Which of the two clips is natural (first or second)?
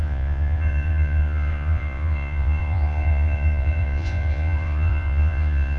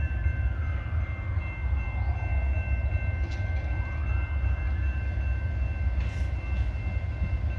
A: second